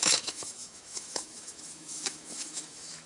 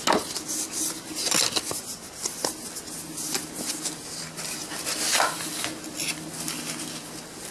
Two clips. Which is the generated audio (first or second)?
first